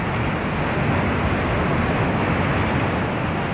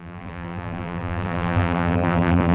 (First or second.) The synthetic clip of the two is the second